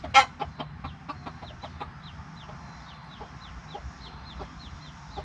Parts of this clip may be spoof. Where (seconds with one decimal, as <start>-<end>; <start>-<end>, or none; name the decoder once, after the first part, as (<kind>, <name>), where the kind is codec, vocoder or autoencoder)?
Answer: none